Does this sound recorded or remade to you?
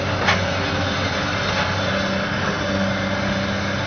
recorded